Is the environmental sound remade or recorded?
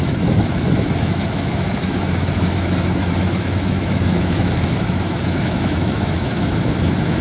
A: remade